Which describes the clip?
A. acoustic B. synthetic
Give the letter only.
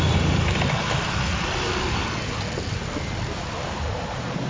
A